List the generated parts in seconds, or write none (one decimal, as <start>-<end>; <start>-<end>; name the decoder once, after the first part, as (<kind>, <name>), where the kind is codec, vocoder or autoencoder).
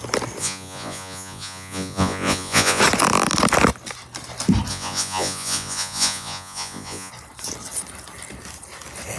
0.4-2.8 (vocoder, Vocos); 4.7-7.1